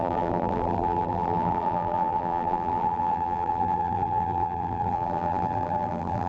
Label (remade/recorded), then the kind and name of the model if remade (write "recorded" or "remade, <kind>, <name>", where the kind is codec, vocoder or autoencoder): remade, vocoder, BigVGAN v2